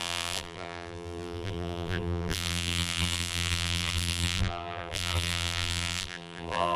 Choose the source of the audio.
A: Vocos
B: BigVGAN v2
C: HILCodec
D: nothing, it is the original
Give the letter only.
B